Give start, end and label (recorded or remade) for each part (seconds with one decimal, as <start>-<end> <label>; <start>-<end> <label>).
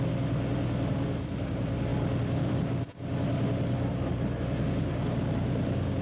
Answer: 0.0-6.0 recorded